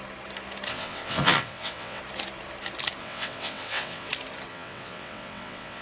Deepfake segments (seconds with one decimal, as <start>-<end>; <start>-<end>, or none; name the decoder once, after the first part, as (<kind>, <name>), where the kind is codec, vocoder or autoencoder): 0.7-2.0 (vocoder, WaveNeXt); 3.0-4.1; 4.5-5.8